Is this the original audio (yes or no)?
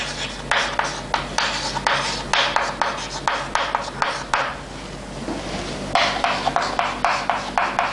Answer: yes